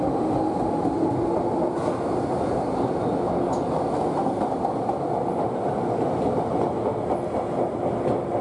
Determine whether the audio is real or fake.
real